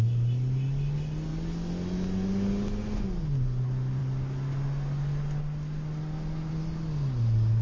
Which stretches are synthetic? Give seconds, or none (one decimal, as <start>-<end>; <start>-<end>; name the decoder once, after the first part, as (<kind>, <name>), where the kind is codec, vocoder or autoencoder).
none